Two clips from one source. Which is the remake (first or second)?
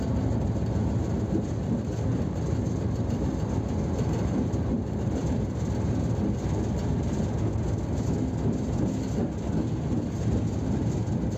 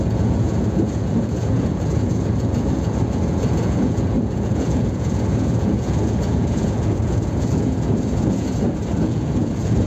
second